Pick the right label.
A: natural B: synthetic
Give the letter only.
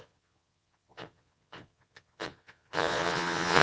B